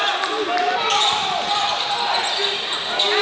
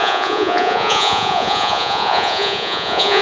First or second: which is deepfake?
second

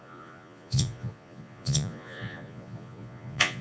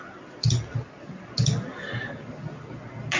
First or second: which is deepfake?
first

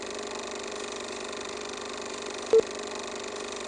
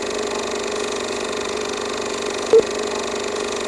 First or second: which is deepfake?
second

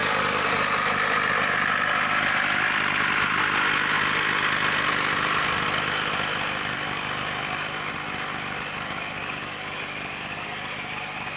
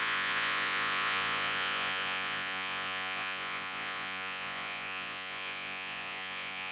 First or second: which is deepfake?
second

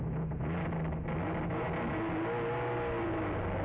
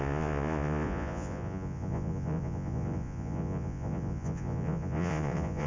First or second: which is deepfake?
second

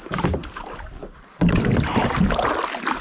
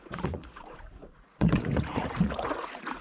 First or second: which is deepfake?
second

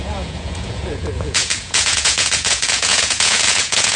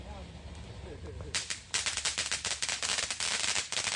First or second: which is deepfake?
first